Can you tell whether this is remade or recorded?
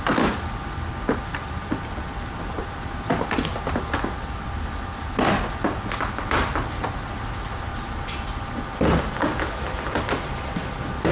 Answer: recorded